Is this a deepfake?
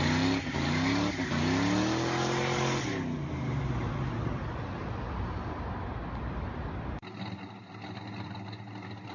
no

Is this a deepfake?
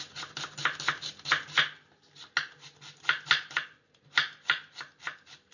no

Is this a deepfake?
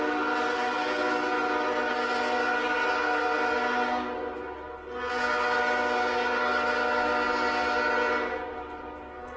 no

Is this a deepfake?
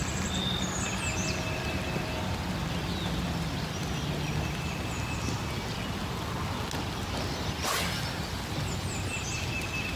no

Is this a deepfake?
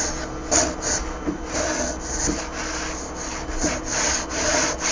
no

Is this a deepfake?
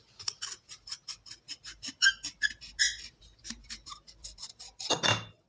no